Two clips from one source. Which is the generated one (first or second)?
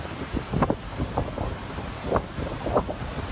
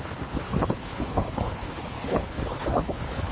second